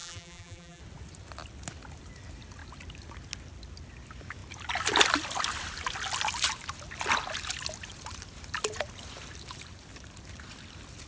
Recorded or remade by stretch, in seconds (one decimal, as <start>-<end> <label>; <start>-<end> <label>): 0.0-0.8 remade; 0.8-11.1 recorded